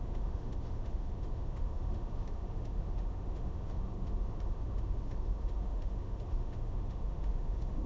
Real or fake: fake